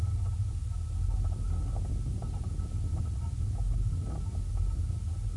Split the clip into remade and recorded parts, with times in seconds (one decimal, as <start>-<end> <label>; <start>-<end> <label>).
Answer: 0.0-5.4 recorded